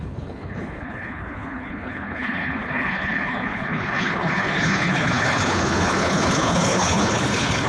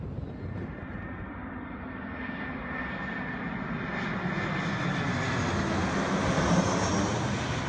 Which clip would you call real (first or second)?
second